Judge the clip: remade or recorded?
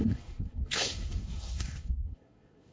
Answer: remade